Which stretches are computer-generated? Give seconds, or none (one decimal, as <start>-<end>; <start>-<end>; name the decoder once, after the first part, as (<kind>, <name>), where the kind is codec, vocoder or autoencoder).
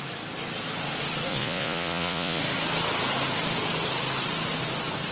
1.3-2.4 (vocoder, Vocos)